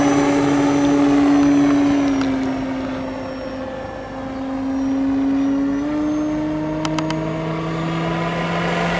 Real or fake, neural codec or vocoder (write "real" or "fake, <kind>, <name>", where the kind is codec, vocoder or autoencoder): real